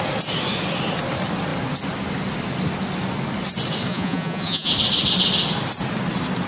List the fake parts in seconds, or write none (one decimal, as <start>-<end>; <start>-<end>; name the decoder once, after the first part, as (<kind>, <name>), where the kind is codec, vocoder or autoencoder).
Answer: 3.9-4.7 (vocoder, Vocos)